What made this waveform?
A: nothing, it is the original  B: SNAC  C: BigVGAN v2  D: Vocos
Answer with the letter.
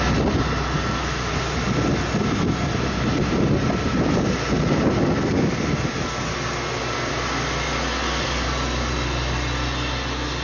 A